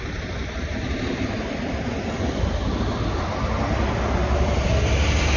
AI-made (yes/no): no